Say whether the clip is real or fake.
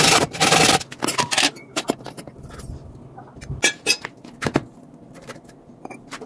real